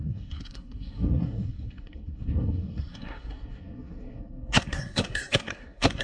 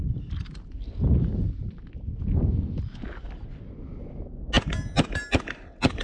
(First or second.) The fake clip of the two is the first